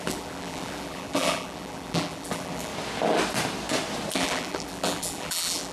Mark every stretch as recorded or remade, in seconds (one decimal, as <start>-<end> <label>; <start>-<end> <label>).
0.0-2.7 remade; 2.7-4.1 recorded; 4.1-5.7 remade